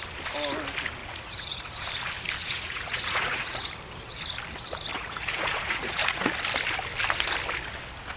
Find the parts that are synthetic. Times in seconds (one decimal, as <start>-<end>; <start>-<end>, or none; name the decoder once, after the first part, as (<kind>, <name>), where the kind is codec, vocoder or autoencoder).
1.0-1.7 (vocoder, Vocos); 2.4-3.7; 4.9-6.3